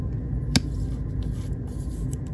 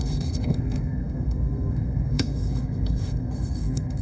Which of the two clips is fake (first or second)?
second